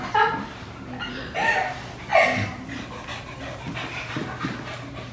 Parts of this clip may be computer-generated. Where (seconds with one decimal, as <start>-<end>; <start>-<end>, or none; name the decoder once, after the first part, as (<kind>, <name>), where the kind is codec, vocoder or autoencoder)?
none